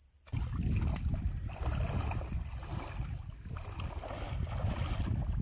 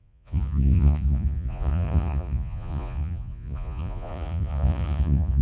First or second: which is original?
first